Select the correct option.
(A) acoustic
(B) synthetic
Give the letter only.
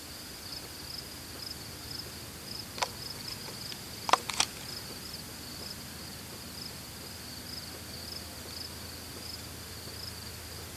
A